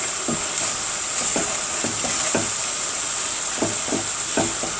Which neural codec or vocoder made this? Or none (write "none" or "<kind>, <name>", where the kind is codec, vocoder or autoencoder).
none